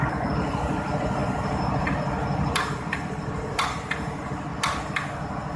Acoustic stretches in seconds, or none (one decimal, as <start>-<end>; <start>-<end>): 4.5-5.6